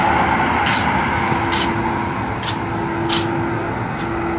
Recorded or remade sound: recorded